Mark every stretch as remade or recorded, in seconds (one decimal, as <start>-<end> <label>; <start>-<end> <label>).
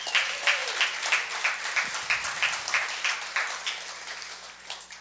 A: 0.0-5.0 recorded